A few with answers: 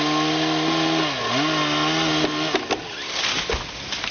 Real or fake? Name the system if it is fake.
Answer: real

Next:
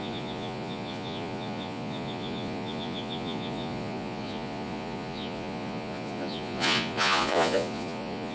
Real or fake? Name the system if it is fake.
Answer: fake, vocoder, Vocos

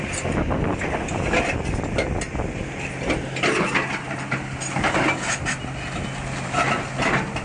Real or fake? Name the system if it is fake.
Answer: real